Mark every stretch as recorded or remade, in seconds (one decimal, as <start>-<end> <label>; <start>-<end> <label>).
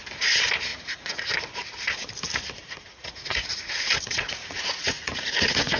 0.0-0.7 recorded; 0.7-1.4 remade; 1.4-2.6 recorded; 2.6-5.8 remade